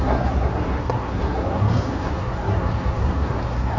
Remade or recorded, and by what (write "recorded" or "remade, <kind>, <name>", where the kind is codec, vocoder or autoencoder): remade, codec, SNAC